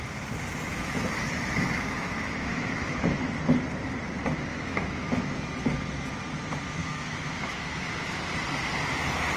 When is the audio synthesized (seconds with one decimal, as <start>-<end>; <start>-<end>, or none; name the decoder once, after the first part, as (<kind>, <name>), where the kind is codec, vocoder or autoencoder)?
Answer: 0.7-3.3 (autoencoder, DAC-VAE); 4.5-5.3; 6.8-7.9